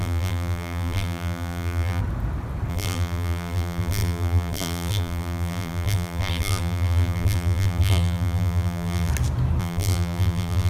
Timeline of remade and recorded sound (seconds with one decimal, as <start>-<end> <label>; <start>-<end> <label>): 0.0-2.0 remade; 2.0-2.7 recorded; 2.7-9.1 remade; 9.1-9.6 recorded; 9.6-10.7 remade